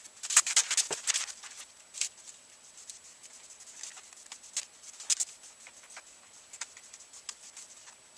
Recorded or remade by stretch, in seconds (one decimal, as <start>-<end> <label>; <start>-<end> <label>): 0.0-8.2 recorded